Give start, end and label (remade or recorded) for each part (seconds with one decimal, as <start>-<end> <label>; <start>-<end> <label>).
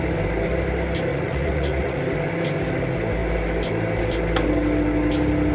0.0-1.1 recorded; 1.1-2.0 remade; 2.0-5.5 recorded